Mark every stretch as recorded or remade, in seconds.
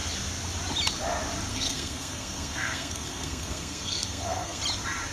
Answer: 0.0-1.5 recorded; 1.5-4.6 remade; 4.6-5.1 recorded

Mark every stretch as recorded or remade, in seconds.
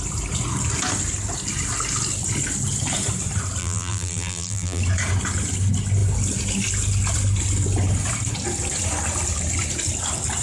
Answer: 0.0-3.6 recorded; 3.6-4.8 remade; 4.8-10.4 recorded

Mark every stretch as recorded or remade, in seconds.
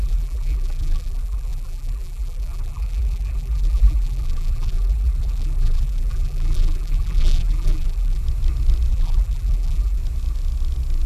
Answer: 0.0-8.2 remade; 8.2-8.9 recorded; 8.9-10.0 remade; 10.0-11.1 recorded